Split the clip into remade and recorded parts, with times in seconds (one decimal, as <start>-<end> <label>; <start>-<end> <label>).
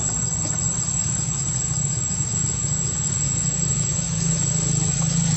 0.0-1.0 recorded; 1.0-4.2 remade; 4.2-5.4 recorded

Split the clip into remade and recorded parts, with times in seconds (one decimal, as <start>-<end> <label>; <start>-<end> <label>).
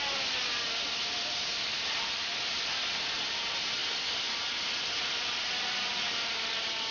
0.0-6.9 recorded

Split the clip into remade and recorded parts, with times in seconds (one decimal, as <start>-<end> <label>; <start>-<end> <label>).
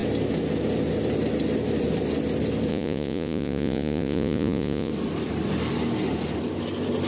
0.0-2.7 recorded; 2.7-4.9 remade; 4.9-7.1 recorded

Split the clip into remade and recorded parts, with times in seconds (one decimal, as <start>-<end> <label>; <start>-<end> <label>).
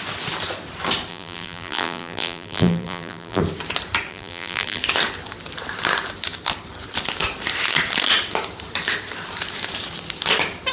0.0-1.1 recorded; 1.1-3.4 remade; 3.4-4.1 recorded; 4.1-4.8 remade; 4.8-10.7 recorded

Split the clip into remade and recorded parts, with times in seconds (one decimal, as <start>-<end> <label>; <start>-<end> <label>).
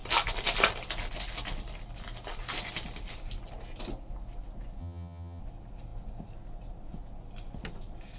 0.0-4.8 recorded; 4.8-5.4 remade; 5.4-8.2 recorded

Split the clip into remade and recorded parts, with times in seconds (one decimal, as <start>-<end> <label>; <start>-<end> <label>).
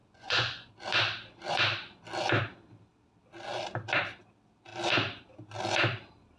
0.0-0.7 remade; 0.7-6.4 recorded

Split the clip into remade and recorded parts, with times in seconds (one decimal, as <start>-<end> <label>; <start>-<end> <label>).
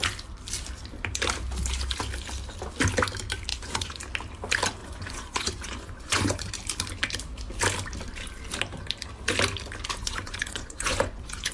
0.0-3.5 recorded; 3.5-4.0 remade; 4.0-4.8 recorded; 4.8-6.5 remade; 6.5-10.0 recorded; 10.0-11.5 remade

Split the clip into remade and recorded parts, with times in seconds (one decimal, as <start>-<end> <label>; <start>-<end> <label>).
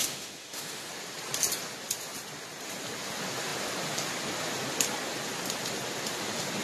0.0-0.9 remade; 0.9-6.6 recorded